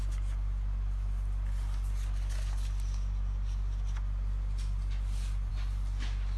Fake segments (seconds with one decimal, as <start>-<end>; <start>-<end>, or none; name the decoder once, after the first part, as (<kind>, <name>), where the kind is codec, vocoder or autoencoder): none